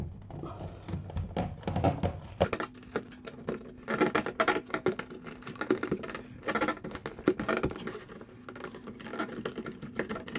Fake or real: real